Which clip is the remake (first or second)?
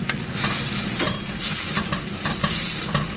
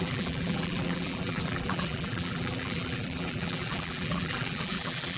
second